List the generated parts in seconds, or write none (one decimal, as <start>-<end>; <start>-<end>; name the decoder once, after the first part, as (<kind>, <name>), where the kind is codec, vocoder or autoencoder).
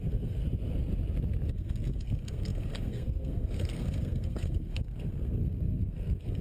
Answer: 0.0-0.4 (codec, SNAC); 1.5-6.4